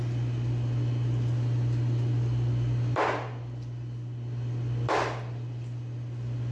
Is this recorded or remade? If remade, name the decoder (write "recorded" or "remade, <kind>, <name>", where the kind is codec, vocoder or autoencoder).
recorded